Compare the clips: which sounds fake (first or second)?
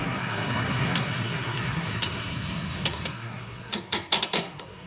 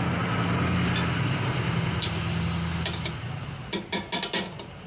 first